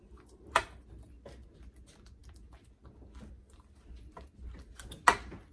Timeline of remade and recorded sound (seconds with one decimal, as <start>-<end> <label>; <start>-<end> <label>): 0.0-1.1 remade; 1.1-5.5 recorded